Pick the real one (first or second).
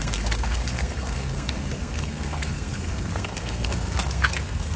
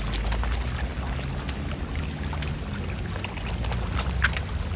second